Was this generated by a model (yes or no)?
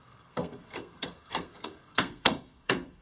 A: yes